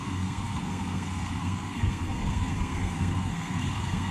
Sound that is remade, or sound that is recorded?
remade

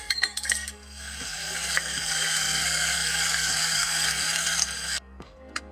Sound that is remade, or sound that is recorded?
remade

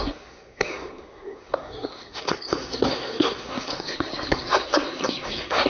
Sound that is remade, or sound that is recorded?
remade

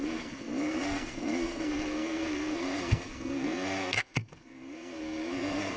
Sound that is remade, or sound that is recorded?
remade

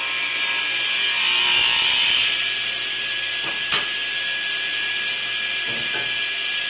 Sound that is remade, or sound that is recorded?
recorded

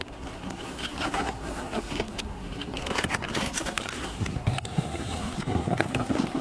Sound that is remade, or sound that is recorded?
remade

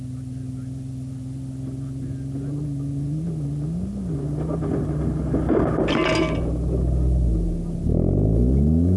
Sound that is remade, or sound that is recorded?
recorded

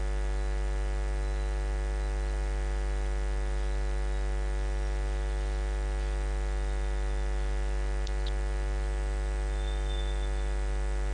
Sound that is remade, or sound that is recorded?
recorded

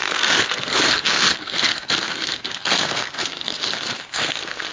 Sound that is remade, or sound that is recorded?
remade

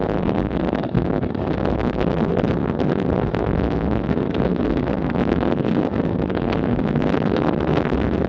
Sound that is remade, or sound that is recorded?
remade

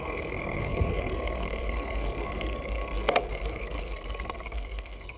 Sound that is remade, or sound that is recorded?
remade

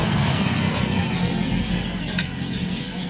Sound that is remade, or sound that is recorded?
remade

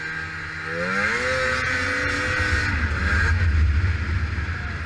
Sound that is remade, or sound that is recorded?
recorded